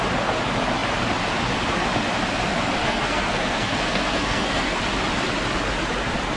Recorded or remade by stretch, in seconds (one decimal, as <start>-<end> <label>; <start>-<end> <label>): 0.0-2.8 recorded; 2.8-4.8 remade; 4.8-6.4 recorded